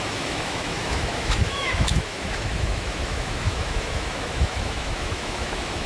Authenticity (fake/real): fake